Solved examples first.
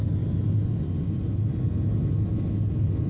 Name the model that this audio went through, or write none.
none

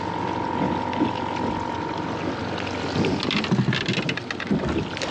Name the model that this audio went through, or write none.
none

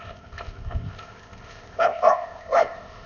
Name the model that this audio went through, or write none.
codec, ZipCodec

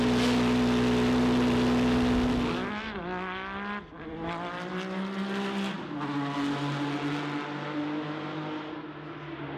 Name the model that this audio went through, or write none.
none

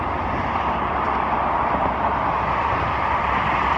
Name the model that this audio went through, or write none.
none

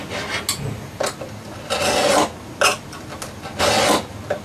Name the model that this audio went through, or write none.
none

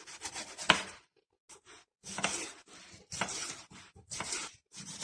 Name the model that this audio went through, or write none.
none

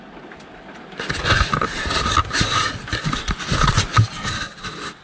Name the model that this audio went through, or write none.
none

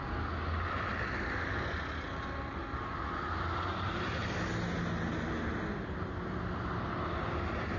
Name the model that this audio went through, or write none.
none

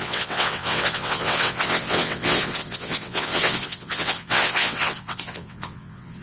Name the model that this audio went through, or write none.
vocoder, WaveNeXt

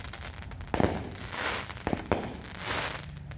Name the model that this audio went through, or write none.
none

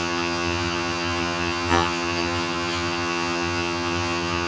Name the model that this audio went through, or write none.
vocoder, HiFi-GAN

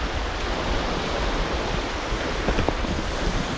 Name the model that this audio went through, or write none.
none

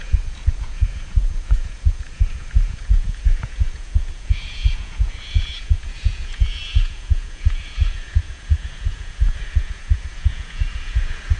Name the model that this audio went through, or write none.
vocoder, Vocos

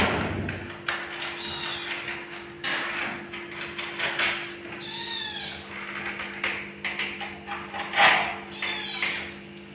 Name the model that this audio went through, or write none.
none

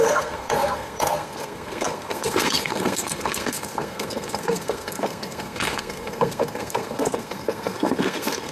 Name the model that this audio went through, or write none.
codec, SNAC